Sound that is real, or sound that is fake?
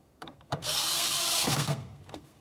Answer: fake